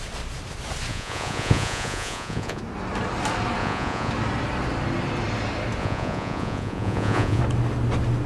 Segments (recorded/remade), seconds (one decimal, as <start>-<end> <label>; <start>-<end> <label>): 0.0-0.9 recorded; 0.9-2.6 remade; 2.6-3.6 recorded; 3.6-4.1 remade; 4.1-5.8 recorded; 5.8-7.4 remade; 7.4-8.3 recorded